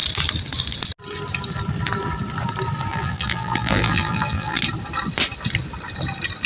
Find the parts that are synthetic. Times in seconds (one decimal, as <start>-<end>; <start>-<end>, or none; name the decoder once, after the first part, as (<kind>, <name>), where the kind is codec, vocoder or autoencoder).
2.9-4.6 (vocoder, BigVGAN v2)